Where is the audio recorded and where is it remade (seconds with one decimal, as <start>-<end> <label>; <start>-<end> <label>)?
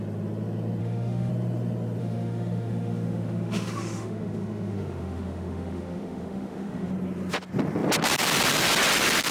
0.0-0.8 recorded; 0.8-1.3 remade; 1.3-2.0 recorded; 2.0-6.9 remade; 6.9-9.3 recorded